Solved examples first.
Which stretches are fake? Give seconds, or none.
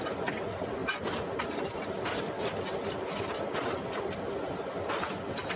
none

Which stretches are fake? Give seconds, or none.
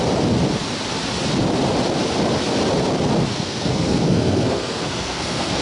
3.3-5.6 (codec, SNAC)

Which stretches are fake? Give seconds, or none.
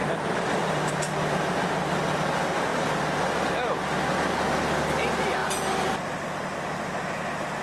0.0-0.9 (vocoder, BigVGAN v2)